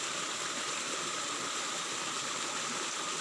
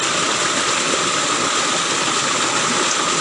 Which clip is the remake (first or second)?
first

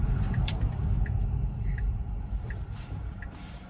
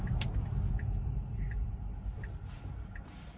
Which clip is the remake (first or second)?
first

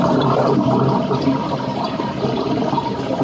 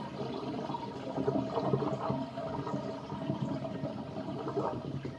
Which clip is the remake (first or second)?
first